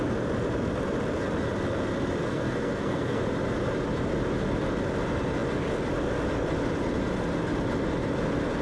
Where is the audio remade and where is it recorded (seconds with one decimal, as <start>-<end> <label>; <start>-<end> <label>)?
0.0-2.3 recorded; 2.3-3.2 remade; 3.2-8.6 recorded